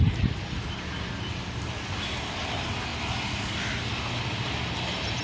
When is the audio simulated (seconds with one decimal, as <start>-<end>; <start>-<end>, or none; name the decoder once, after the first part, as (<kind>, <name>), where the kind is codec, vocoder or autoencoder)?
none